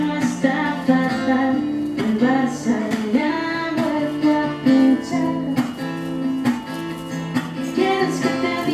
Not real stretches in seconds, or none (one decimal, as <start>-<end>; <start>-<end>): 2.8-3.3